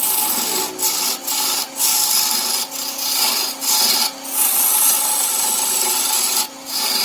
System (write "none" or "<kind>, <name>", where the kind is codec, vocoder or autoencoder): none